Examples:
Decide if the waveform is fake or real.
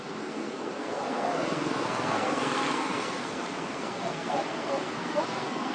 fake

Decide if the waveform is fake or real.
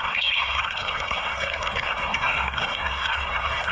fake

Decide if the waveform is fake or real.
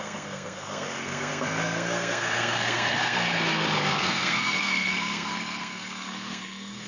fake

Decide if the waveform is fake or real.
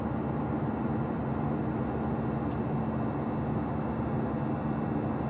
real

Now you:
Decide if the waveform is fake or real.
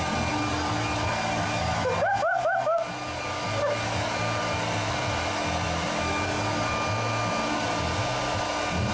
real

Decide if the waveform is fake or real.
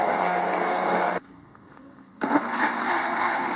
fake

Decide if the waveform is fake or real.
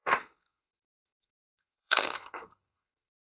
fake